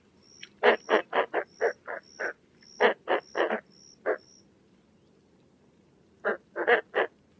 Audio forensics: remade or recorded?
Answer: recorded